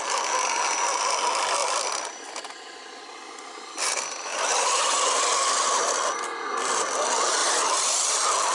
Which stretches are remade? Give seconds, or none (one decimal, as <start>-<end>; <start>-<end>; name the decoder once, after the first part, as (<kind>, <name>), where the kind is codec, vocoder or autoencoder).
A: 1.6-2.6 (vocoder, BigVGAN v2); 4.3-6.5; 7.4-8.1